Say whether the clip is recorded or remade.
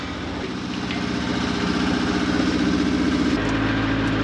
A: recorded